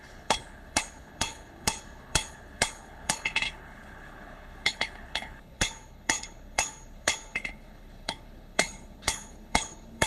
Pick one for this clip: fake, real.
fake